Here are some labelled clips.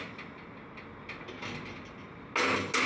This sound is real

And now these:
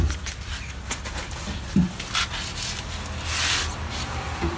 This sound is real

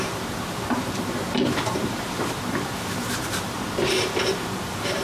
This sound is fake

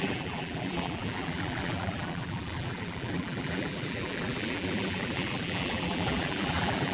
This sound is fake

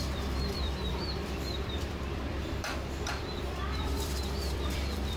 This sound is fake